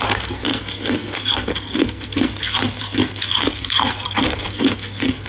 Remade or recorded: remade